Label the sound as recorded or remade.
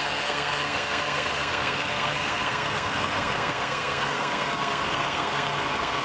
remade